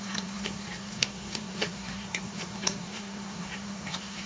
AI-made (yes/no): yes